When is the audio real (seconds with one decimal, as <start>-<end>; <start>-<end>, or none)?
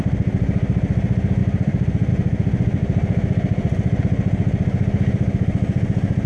0.0-1.4; 2.1-2.8; 4.0-6.3